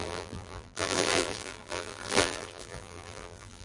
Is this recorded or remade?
remade